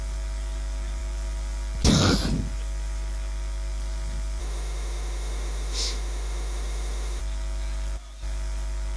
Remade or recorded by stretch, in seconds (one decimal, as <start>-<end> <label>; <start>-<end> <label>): 0.0-4.4 recorded; 4.4-7.2 remade; 7.2-9.0 recorded